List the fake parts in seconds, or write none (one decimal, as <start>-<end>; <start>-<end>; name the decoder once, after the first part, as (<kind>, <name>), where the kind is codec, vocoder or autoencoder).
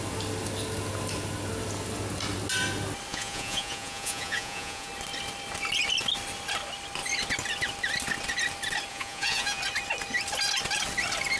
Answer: 3.1-4.9 (vocoder, Vocos); 8.9-9.6